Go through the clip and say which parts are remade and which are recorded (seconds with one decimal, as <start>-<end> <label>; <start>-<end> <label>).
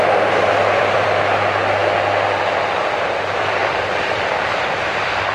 0.0-1.8 remade; 1.8-2.4 recorded; 2.4-5.3 remade